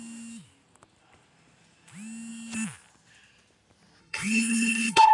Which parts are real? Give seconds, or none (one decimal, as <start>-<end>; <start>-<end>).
0.0-4.0